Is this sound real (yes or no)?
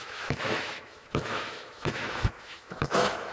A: no